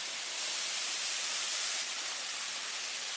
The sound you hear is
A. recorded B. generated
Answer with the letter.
B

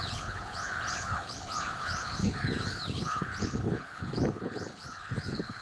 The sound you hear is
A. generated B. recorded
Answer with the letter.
A